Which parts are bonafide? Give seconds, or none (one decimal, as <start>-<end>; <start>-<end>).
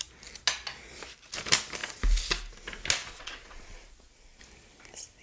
0.0-3.1; 4.4-5.2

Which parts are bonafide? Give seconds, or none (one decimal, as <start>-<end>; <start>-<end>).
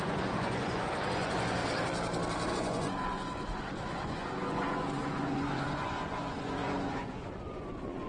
1.6-2.5